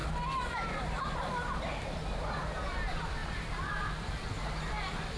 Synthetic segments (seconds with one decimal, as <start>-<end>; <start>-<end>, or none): none

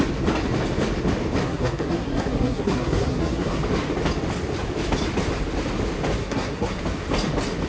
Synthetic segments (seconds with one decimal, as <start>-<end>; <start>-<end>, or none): 1.4-3.6; 6.2-6.8

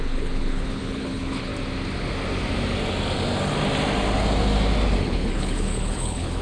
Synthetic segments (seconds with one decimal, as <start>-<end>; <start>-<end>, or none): 0.0-1.5; 5.0-6.4

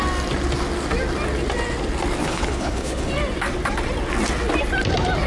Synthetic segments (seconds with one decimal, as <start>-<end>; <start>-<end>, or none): 2.2-3.1

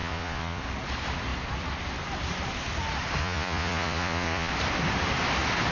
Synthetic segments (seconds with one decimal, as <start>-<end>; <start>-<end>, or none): 0.0-0.6; 3.2-4.5